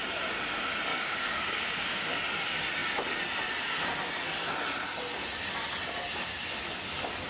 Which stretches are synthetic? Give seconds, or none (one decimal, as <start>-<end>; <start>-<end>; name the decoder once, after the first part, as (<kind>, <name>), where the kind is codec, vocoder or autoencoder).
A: 0.9-2.2 (codec, DAC)